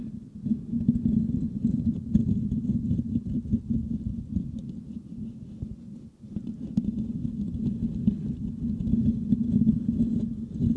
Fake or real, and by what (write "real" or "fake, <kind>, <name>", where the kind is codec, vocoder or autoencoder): real